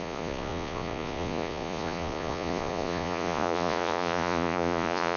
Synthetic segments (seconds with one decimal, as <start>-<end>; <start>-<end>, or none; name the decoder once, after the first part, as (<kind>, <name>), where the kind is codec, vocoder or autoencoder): 0.0-5.2 (vocoder, Vocos)